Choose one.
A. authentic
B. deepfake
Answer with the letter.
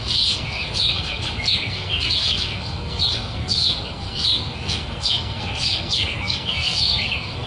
B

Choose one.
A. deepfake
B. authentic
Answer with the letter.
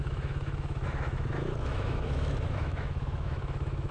A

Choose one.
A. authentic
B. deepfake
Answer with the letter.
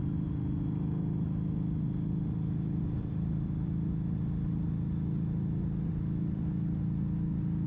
A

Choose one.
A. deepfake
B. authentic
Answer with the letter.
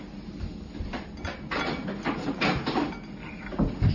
B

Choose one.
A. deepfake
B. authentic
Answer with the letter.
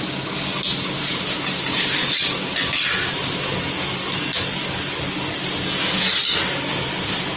B